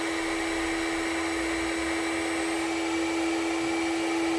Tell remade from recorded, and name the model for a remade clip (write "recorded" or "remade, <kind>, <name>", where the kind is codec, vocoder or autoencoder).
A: recorded